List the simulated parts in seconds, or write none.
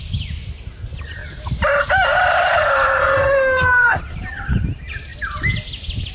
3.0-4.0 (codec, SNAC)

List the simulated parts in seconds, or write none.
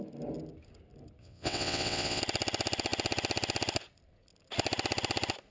1.2-2.2 (vocoder, WaveNeXt)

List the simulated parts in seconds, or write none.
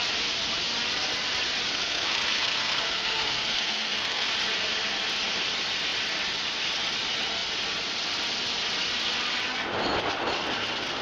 1.7-4.3 (codec, SNAC)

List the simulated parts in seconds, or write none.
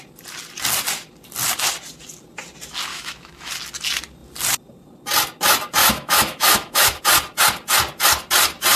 2.9-3.5 (autoencoder, DAC-VAE); 5.8-7.0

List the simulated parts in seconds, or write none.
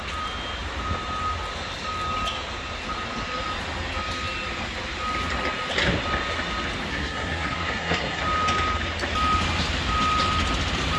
6.9-8.2 (codec, SNAC)